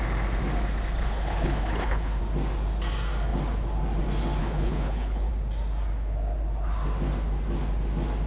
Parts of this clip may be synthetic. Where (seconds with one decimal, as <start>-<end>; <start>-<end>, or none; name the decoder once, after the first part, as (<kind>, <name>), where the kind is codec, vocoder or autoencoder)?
1.0-2.2 (codec, HILCodec); 4.4-5.3